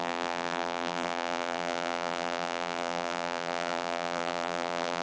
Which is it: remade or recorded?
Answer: remade